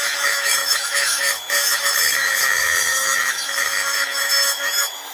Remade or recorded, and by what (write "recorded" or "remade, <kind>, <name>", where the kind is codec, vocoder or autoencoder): remade, autoencoder, DAC-VAE